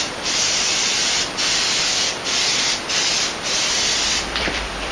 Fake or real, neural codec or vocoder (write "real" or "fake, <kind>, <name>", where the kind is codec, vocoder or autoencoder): fake, vocoder, BigVGAN v2